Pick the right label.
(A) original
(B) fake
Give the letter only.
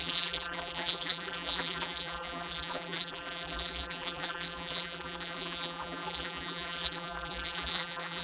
B